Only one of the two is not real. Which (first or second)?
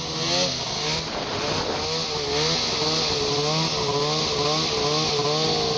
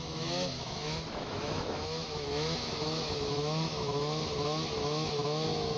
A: second